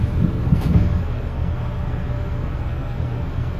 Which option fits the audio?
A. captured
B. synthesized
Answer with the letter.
B